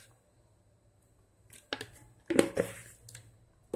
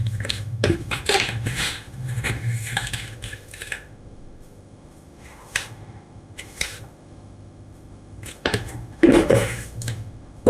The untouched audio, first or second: first